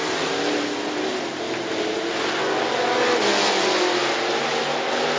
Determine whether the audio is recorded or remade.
recorded